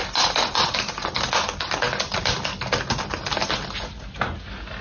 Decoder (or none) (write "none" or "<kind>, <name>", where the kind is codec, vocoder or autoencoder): none